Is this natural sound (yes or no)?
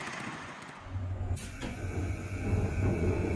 no